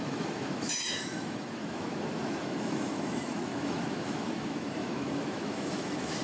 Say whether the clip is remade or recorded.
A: remade